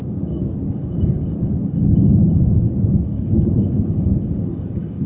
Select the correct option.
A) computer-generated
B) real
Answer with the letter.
A